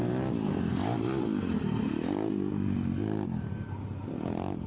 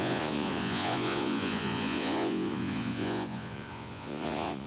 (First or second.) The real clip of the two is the first